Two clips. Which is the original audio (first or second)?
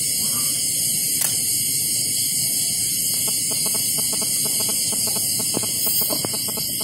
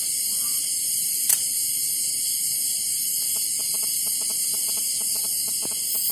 second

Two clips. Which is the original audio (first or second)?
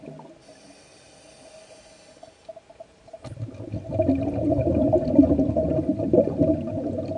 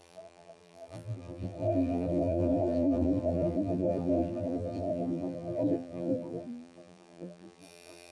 first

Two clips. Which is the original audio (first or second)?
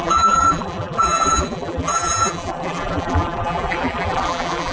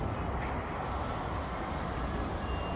second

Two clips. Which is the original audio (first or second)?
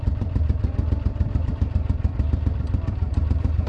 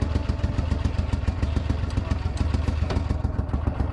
second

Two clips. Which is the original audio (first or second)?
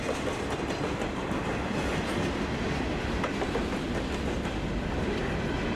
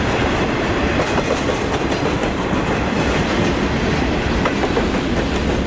first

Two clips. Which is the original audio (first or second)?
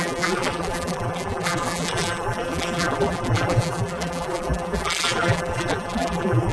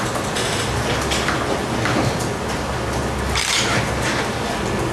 second